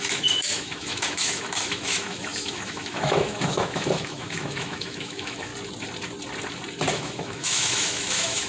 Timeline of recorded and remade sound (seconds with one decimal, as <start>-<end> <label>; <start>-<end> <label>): 0.0-5.5 remade; 5.5-6.9 recorded; 6.9-8.5 remade